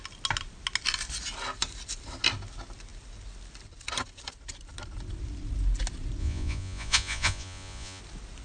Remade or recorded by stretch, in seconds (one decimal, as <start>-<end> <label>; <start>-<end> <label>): 0.0-6.2 recorded; 6.2-8.0 remade; 8.0-8.4 recorded